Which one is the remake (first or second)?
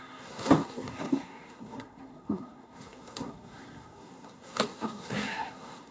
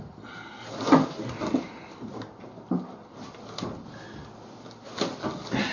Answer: first